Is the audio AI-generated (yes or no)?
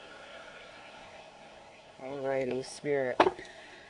yes